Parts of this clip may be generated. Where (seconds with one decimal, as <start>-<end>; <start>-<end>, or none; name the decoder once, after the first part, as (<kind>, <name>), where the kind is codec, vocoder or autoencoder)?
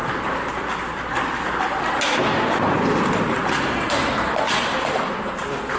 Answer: none